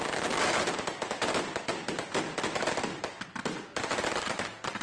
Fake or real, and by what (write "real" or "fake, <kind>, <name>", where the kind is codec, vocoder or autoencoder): real